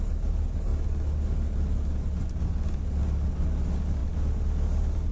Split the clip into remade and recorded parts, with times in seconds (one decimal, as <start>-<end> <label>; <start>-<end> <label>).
0.0-5.1 recorded